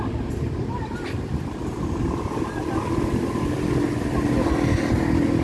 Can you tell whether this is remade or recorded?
recorded